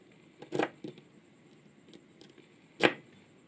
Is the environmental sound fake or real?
real